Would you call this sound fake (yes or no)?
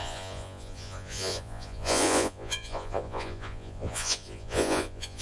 yes